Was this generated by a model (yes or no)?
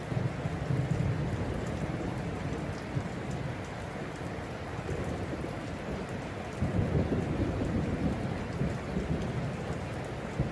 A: no